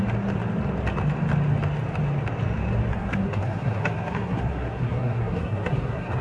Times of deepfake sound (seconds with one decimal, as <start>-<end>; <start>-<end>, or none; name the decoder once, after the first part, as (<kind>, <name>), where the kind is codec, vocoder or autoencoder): 2.9-6.2 (codec, SNAC)